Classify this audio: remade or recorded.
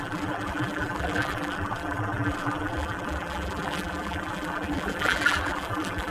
remade